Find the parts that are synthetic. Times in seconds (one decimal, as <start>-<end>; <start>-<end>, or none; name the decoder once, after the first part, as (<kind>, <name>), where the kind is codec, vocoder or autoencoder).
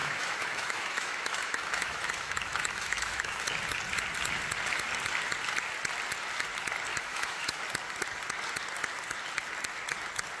0.0-3.5 (autoencoder, DAC-VAE); 6.9-7.6